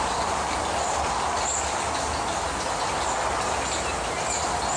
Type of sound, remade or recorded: recorded